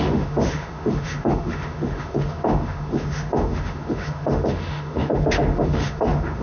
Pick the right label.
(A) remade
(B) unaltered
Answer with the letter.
A